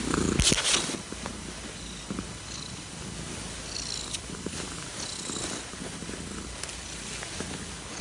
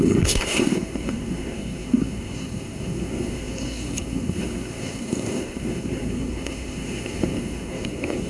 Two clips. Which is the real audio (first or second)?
first